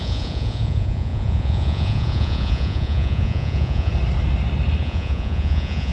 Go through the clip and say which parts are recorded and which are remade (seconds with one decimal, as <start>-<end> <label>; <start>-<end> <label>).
0.0-3.9 remade; 3.9-4.8 recorded; 4.8-5.9 remade